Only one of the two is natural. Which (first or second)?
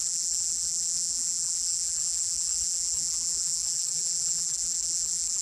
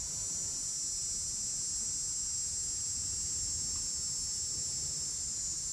second